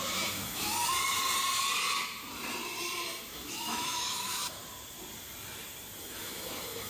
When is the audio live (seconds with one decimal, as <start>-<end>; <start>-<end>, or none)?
0.7-3.3; 4.6-6.0